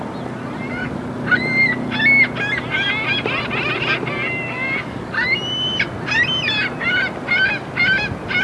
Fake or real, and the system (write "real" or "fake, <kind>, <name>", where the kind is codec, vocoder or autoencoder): real